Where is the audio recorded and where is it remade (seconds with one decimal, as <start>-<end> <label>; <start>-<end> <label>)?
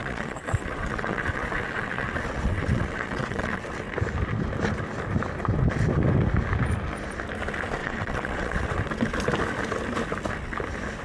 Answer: 0.0-3.8 remade; 3.8-7.8 recorded; 7.8-8.8 remade; 8.8-11.0 recorded